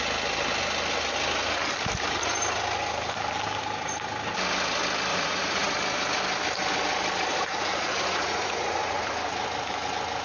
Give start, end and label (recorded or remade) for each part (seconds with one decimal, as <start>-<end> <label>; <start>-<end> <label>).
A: 0.0-5.1 recorded; 5.1-5.7 remade; 5.7-7.3 recorded; 7.3-9.1 remade; 9.1-10.2 recorded